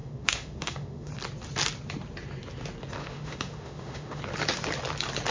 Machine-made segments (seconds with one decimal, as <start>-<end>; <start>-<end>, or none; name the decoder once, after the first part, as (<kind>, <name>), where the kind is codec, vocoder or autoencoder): 0.0-1.1 (autoencoder, DAC-VAE); 3.0-4.2